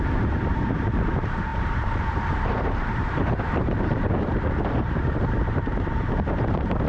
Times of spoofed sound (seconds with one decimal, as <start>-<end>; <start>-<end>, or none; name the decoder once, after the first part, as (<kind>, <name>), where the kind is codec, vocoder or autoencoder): 0.0-6.9 (vocoder, BigVGAN v2)